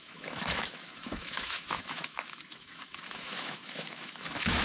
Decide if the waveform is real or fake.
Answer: fake